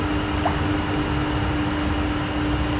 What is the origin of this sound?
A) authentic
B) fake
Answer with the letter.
A